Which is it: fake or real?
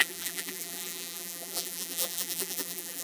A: fake